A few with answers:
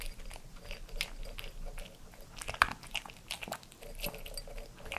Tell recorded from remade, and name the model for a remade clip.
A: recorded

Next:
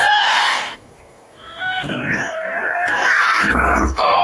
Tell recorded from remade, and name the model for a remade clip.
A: remade, codec, DAC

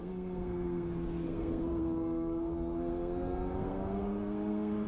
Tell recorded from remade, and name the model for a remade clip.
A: remade, codec, SNAC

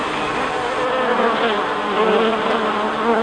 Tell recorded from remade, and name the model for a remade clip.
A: recorded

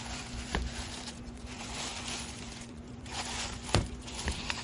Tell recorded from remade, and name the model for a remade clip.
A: remade, vocoder, Vocos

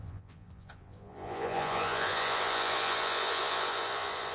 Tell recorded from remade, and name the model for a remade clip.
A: remade, vocoder, Vocos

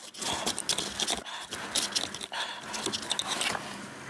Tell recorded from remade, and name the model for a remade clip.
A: recorded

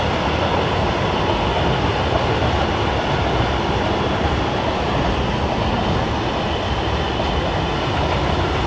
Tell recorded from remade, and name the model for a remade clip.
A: recorded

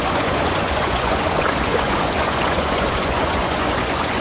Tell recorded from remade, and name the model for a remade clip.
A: remade, vocoder, Vocos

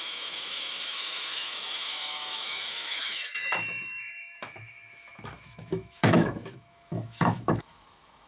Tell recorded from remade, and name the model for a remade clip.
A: remade, autoencoder, DAC-VAE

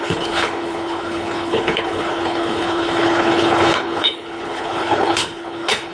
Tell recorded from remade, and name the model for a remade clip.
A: remade, codec, HILCodec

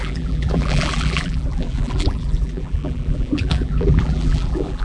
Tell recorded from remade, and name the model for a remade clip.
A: remade, vocoder, BigVGAN v2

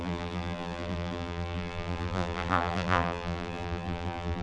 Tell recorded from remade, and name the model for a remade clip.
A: remade, vocoder, BigVGAN v2